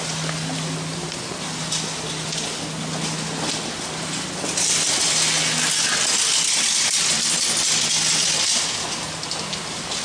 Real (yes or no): yes